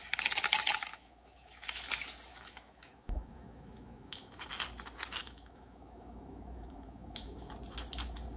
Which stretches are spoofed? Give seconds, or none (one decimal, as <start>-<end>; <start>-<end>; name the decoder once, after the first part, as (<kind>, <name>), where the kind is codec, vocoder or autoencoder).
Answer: 0.9-1.9 (autoencoder, DAC-VAE); 2.3-4.5; 5.2-7.5